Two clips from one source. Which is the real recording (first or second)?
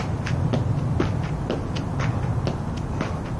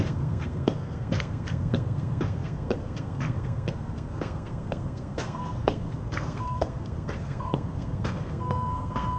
first